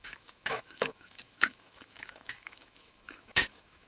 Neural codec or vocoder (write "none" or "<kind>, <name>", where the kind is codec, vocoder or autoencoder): autoencoder, DAC-VAE